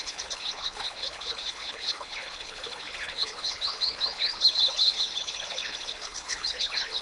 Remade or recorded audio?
remade